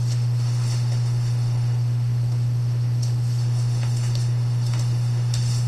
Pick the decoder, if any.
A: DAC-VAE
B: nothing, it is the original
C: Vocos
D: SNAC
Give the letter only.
A